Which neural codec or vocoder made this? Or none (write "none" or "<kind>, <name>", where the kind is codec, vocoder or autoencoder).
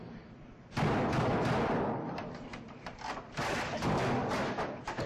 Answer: vocoder, BigVGAN v2